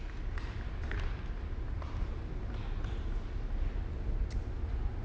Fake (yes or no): no